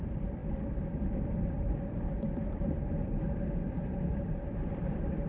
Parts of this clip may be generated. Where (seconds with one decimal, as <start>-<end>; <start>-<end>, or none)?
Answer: 0.0-4.1; 4.7-5.3